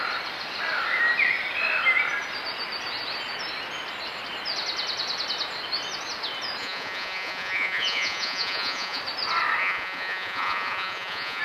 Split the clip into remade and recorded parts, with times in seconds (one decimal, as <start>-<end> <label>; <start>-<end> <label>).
0.0-6.6 recorded; 6.6-9.0 remade; 9.0-9.6 recorded; 9.6-11.4 remade